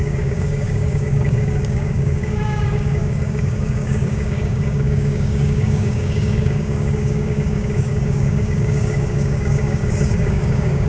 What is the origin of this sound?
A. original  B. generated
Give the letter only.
B